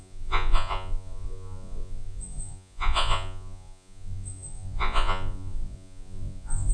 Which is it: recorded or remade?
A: remade